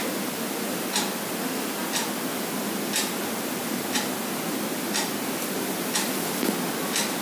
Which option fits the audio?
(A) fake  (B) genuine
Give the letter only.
B